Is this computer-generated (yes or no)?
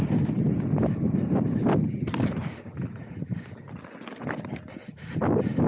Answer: no